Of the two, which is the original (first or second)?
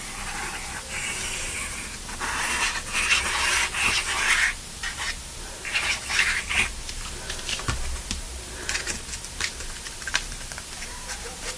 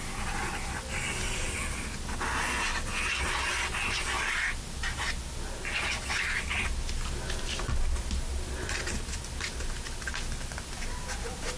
second